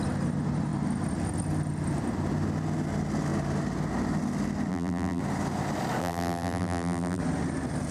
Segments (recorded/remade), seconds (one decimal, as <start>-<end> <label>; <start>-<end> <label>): 0.0-4.7 recorded; 4.7-5.2 remade; 5.2-6.0 recorded; 6.0-7.2 remade; 7.2-7.9 recorded